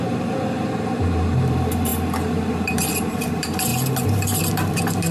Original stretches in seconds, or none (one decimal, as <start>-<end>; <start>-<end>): none